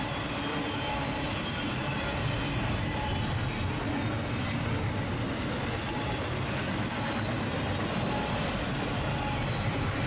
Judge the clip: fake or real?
real